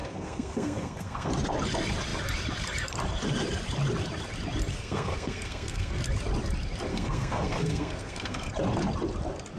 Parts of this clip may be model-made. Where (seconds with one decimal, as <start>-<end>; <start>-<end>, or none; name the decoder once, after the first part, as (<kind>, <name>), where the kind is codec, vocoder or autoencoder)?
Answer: 0.0-1.3 (codec, SNAC); 4.7-6.0; 6.9-8.5